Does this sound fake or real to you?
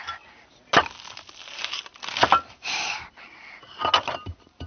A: real